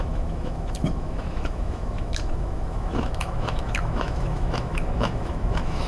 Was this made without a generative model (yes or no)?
no